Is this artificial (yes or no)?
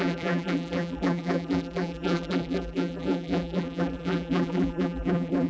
yes